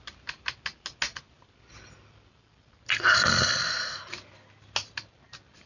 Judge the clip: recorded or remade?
recorded